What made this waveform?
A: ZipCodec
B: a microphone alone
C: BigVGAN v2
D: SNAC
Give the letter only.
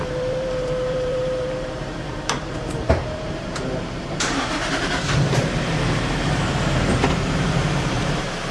C